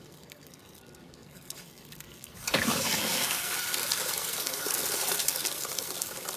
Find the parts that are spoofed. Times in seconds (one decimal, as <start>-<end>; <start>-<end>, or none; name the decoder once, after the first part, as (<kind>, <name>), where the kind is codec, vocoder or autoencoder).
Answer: 0.0-6.4 (codec, SNAC)